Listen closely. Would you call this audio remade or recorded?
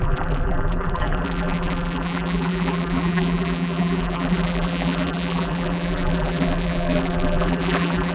remade